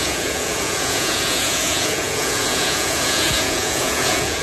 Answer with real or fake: fake